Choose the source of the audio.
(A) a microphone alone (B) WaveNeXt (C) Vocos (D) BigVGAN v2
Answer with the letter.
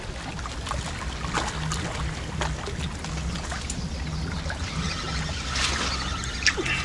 A